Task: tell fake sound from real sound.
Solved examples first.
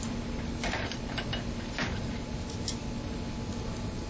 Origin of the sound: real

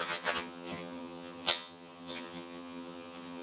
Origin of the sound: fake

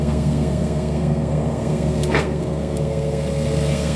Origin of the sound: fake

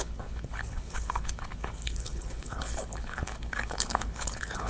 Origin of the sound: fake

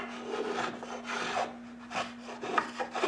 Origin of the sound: real